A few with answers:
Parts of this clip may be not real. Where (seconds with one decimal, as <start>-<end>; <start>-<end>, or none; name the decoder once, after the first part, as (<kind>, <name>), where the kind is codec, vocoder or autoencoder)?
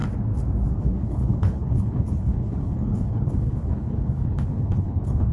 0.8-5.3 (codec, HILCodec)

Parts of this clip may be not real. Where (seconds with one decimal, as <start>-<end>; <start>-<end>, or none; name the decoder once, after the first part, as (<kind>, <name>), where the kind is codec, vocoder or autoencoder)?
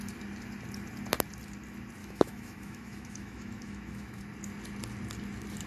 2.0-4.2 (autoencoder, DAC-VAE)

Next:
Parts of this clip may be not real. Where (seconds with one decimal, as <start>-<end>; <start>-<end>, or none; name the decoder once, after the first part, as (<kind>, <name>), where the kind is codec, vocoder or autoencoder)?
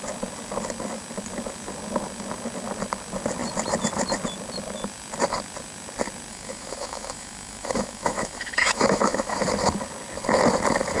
6.3-9.4 (autoencoder, DAC-VAE)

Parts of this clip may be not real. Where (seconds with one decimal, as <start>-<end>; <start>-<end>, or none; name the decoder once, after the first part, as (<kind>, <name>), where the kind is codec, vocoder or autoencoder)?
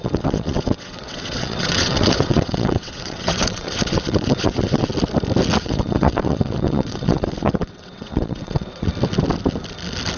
0.0-4.9 (vocoder, WaveNeXt); 5.6-8.9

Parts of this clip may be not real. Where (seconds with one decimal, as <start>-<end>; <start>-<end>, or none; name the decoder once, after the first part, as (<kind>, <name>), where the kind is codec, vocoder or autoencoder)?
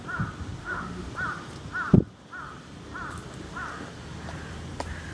0.6-1.1 (autoencoder, DAC-VAE)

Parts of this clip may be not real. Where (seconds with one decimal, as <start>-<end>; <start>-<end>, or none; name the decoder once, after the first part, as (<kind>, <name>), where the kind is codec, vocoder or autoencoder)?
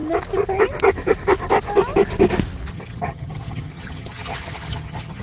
2.7-5.2 (vocoder, HiFi-GAN)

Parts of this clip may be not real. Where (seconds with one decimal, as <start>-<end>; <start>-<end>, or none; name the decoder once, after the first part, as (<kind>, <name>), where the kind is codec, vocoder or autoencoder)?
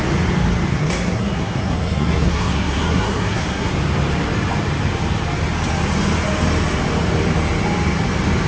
0.7-3.7 (codec, SNAC)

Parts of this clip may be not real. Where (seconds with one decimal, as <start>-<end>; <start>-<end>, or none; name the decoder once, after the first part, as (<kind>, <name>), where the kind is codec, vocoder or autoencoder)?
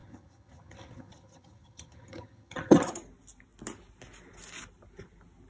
0.0-2.9 (vocoder, HiFi-GAN)